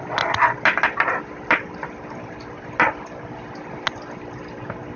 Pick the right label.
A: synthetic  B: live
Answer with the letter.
B